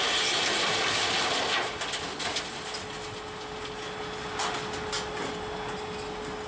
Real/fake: real